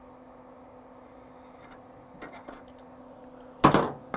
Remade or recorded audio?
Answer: recorded